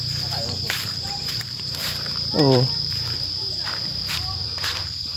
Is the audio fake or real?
fake